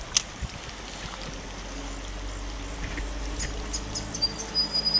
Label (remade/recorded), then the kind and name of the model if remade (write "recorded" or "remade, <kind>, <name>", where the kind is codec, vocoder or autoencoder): recorded